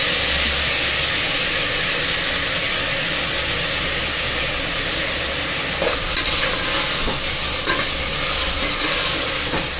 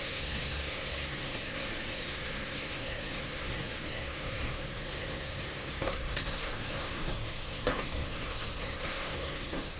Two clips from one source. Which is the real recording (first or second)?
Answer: first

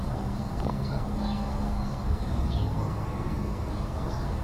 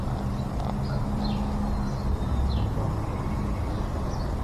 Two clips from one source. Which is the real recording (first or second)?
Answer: second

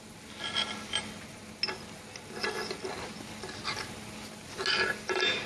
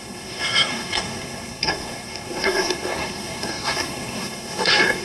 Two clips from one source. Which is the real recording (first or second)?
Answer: first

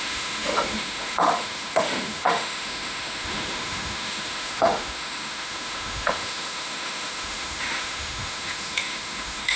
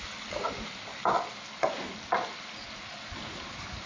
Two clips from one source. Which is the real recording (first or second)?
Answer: second